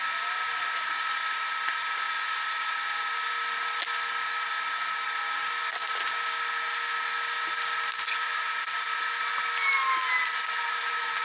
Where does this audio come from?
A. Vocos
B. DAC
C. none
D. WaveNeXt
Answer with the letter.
C